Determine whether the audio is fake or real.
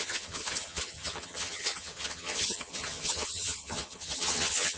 fake